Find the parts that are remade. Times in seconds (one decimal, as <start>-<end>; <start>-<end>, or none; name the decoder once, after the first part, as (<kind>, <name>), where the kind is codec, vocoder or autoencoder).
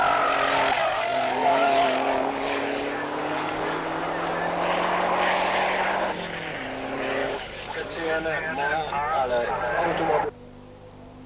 0.8-3.8 (codec, DAC); 7.2-9.5